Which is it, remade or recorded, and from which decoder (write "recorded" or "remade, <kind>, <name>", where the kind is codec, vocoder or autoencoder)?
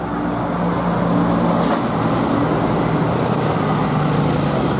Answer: recorded